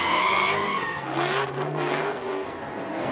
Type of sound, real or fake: fake